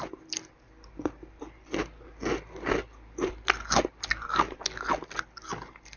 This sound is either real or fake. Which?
real